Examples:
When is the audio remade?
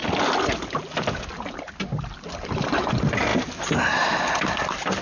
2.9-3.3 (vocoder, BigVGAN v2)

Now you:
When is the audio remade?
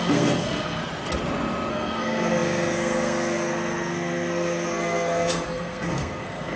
0.0-0.8 (codec, SNAC); 1.7-6.6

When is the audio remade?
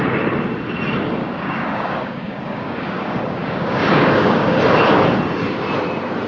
1.2-4.6 (codec, DAC)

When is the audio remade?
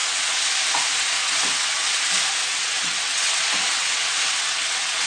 0.0-0.5 (vocoder, WaveNeXt); 1.2-2.0; 2.4-5.1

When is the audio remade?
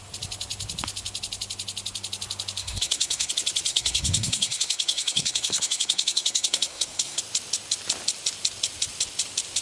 2.6-3.3 (codec, SNAC); 3.7-7.2